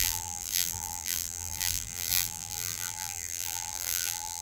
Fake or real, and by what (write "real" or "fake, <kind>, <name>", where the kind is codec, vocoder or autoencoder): fake, vocoder, BigVGAN v2